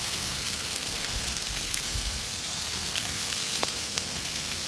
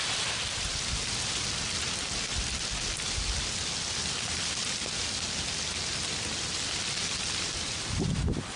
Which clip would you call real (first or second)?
second